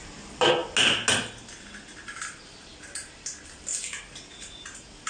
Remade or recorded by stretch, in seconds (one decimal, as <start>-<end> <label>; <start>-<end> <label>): 0.0-5.1 recorded